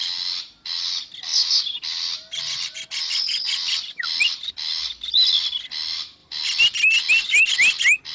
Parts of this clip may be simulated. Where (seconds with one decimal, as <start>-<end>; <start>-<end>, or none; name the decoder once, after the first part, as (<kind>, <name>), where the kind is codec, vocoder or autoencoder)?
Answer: none